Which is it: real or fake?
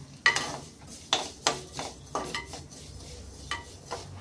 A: real